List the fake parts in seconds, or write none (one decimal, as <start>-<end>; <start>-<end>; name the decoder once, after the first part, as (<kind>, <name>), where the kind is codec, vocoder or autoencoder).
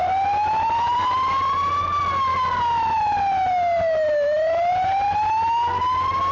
none